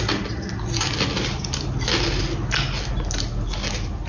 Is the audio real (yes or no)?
yes